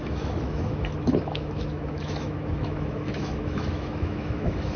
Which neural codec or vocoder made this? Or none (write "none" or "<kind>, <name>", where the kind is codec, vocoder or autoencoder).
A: autoencoder, DAC-VAE